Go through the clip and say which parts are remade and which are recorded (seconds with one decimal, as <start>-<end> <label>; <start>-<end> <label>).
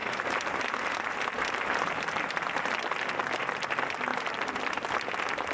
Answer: 0.0-2.7 remade; 2.7-4.1 recorded; 4.1-4.6 remade; 4.6-5.5 recorded